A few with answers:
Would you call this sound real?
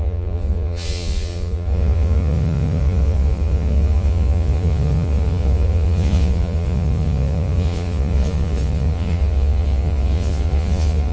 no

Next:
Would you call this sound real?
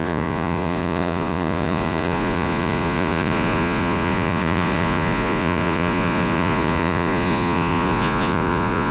no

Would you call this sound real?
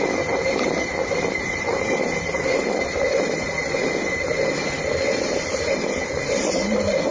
yes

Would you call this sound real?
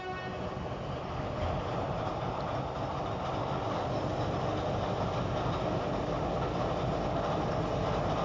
yes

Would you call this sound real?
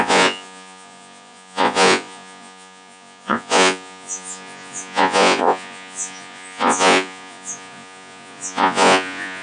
no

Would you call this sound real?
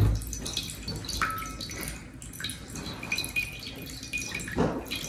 yes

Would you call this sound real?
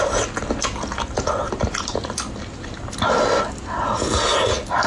yes